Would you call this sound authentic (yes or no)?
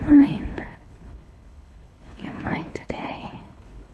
no